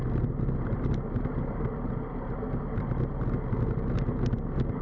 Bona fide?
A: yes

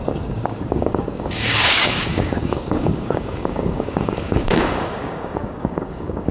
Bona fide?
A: no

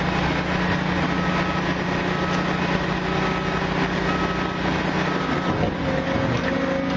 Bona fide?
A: yes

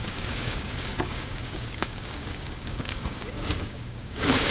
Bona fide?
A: no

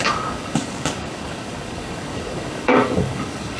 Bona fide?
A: no